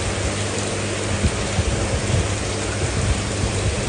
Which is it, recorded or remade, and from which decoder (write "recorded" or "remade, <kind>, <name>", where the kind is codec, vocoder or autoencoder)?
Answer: recorded